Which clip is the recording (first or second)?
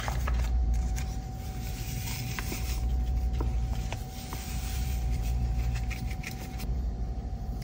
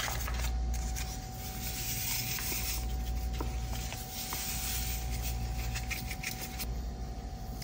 second